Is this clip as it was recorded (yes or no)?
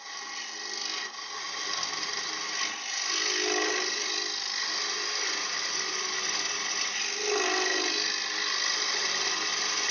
yes